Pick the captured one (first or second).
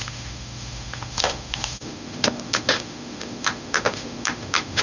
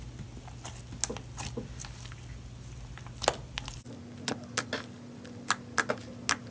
second